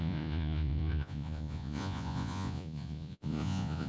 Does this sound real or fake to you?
fake